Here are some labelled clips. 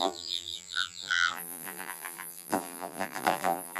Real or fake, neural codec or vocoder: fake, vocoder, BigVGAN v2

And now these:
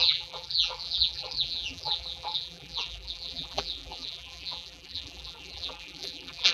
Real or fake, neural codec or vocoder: fake, vocoder, BigVGAN v2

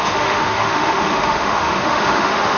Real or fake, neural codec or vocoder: fake, autoencoder, DAC-VAE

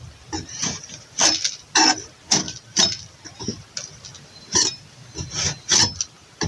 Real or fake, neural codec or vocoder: real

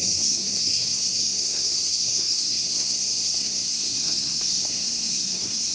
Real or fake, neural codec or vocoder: fake, codec, SNAC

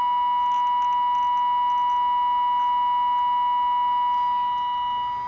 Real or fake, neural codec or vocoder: real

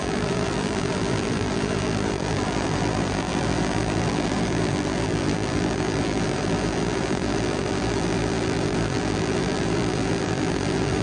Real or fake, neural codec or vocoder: fake, vocoder, BigVGAN v2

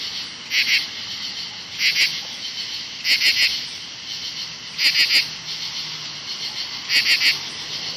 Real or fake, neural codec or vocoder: real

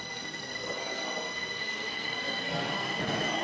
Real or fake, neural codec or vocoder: fake, codec, SNAC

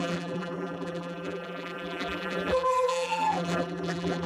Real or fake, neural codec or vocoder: fake, vocoder, BigVGAN v2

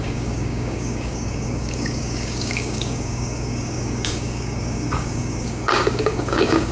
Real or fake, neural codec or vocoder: fake, codec, DAC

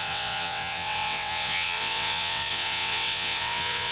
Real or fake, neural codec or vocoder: fake, vocoder, WaveNeXt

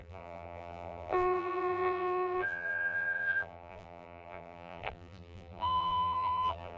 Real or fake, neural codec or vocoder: fake, vocoder, BigVGAN v2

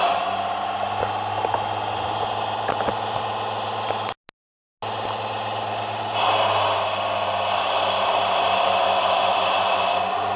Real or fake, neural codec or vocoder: real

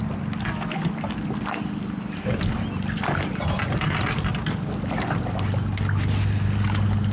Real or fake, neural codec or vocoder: real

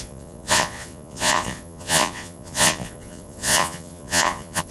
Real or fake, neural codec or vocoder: fake, vocoder, Vocos